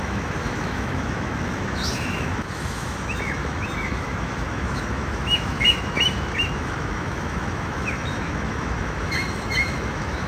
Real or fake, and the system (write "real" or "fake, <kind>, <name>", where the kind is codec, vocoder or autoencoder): fake, autoencoder, DAC-VAE